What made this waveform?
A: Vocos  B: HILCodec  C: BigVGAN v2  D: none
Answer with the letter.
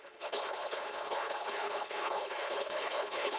B